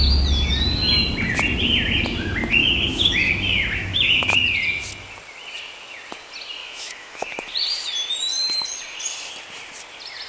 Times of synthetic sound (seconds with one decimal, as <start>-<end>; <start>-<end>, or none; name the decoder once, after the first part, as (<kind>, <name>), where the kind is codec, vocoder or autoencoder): 2.6-3.3 (autoencoder, DAC-VAE); 3.8-4.4; 6.6-7.5